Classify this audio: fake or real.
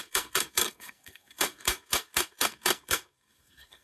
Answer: fake